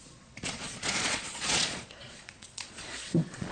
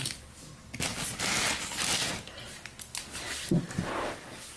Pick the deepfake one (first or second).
first